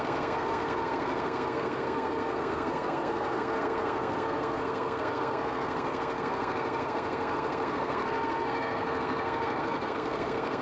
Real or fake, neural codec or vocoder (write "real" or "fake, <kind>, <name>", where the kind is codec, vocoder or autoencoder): fake, codec, SNAC